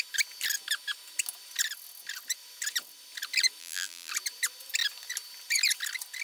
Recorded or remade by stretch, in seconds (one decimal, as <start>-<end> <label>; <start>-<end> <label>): 0.0-3.6 recorded; 3.6-4.1 remade; 4.1-6.2 recorded